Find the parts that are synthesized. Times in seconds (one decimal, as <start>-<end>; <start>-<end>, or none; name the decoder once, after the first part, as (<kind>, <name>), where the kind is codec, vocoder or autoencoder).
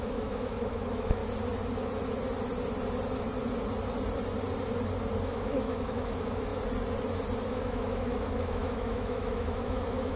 0.0-1.2 (autoencoder, DAC-VAE); 5.3-6.5; 7.5-10.2